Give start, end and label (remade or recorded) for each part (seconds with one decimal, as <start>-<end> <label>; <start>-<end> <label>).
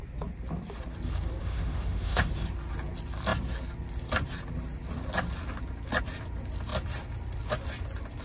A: 0.0-1.4 recorded; 1.4-2.3 remade; 2.3-8.2 recorded